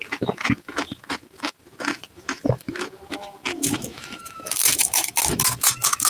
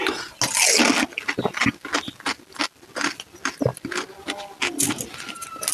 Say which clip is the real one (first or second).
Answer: second